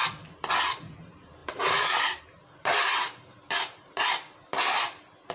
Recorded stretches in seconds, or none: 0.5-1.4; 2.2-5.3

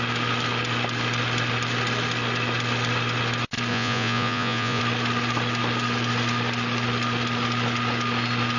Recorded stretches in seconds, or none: 0.0-3.7; 4.8-8.6

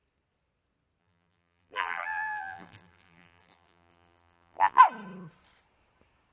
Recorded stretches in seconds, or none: 0.0-1.0; 4.8-6.3

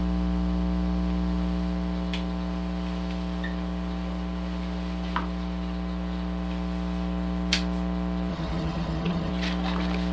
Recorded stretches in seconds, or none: 0.0-8.3; 9.3-10.1

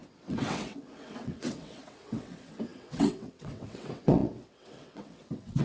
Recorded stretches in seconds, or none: none

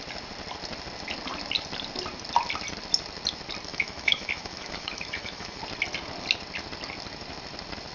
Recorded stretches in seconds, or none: 0.0-3.7; 5.6-7.9

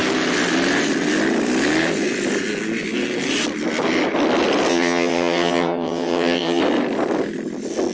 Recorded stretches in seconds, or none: 0.0-4.7; 6.6-7.9